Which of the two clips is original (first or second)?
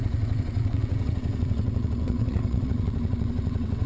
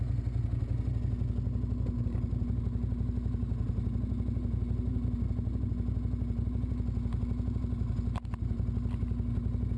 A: second